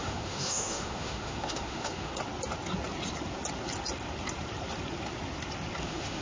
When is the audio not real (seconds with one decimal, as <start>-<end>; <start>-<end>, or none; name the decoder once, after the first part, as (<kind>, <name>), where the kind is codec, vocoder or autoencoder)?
0.0-2.1 (autoencoder, DAC-VAE); 5.8-6.2